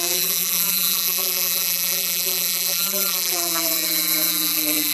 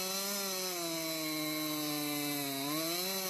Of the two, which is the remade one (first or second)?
first